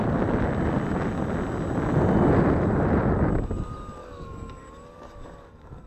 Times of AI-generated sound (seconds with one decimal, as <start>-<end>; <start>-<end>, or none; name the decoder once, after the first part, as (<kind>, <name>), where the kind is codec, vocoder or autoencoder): 4.0-5.9 (codec, DAC)